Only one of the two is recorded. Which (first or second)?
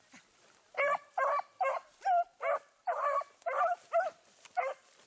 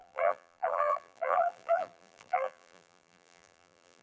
first